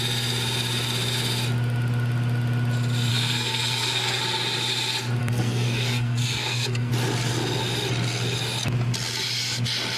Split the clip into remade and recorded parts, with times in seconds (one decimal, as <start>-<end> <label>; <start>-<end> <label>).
0.0-3.1 recorded; 3.1-4.2 remade; 4.2-5.2 recorded; 5.2-6.9 remade; 6.9-10.0 recorded